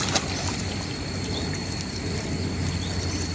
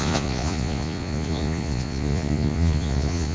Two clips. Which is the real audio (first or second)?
first